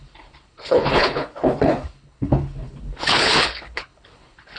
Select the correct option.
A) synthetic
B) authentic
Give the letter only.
A